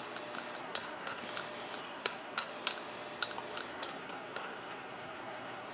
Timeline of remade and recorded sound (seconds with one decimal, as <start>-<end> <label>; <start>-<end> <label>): 0.0-0.6 recorded; 0.6-1.2 remade; 1.2-1.8 recorded; 1.8-2.5 remade; 2.5-3.7 recorded; 3.7-5.7 remade